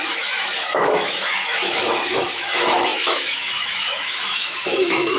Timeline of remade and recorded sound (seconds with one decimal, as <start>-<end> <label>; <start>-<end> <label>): 0.0-5.2 remade